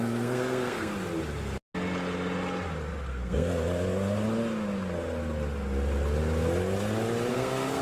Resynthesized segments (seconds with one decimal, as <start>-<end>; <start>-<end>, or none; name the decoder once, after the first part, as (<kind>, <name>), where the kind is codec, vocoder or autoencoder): 0.0-0.9 (codec, SNAC); 3.1-3.5; 7.3-7.8